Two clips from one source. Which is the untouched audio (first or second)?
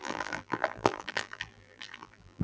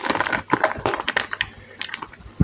second